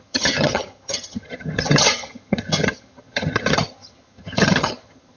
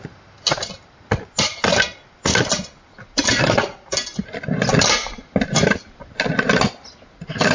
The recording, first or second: second